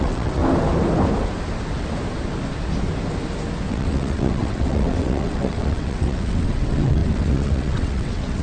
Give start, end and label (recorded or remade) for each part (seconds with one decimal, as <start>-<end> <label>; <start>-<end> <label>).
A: 0.0-0.4 remade; 0.4-3.7 recorded; 3.7-8.4 remade